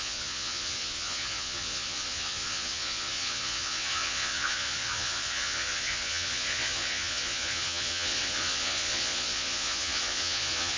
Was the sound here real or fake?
fake